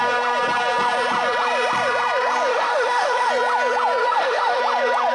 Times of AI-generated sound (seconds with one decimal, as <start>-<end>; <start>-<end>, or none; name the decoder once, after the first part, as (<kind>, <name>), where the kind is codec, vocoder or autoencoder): 2.5-3.3 (autoencoder, DAC-VAE); 4.0-4.6